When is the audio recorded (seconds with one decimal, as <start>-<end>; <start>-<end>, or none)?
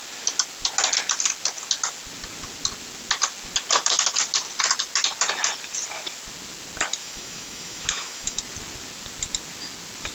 0.0-7.0; 8.4-10.1